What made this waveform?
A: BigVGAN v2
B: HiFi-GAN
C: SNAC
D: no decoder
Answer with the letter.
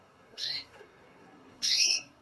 C